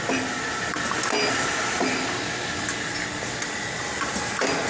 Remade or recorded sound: recorded